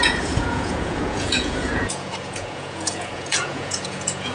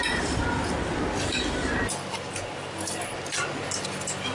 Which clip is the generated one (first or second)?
first